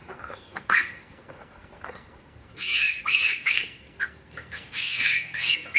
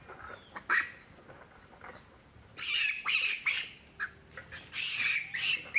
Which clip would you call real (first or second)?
second